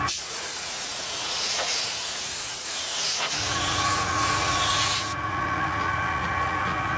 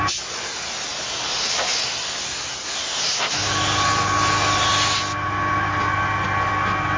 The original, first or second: second